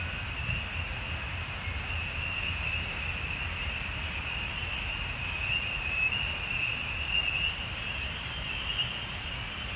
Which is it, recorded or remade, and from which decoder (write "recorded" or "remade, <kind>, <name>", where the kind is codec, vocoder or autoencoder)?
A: recorded